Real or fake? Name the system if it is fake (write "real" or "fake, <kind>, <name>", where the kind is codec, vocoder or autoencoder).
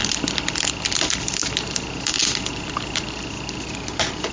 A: real